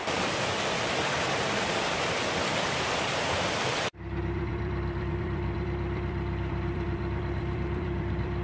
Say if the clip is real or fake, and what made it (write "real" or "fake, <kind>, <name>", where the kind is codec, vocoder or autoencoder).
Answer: fake, vocoder, BigVGAN v2